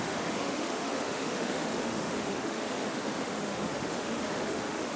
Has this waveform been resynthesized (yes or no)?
yes